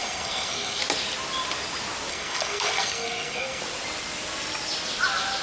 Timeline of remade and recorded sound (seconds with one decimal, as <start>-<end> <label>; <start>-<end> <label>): 0.0-0.8 remade; 0.8-2.1 recorded; 2.1-3.6 remade; 3.6-5.4 recorded